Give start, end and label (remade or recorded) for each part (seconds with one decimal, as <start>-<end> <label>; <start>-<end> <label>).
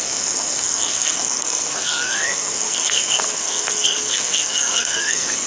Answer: 0.0-5.5 remade